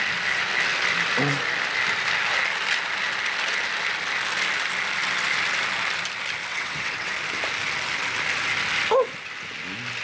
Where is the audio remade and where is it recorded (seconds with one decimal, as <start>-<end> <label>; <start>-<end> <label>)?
0.0-6.5 recorded; 6.5-7.1 remade; 7.1-10.0 recorded